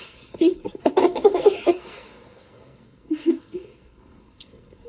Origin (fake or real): fake